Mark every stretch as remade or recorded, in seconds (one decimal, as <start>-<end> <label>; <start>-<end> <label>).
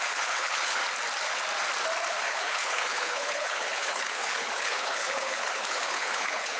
0.0-0.8 remade; 0.8-2.2 recorded; 2.2-6.6 remade